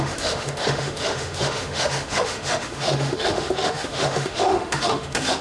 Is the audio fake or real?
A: fake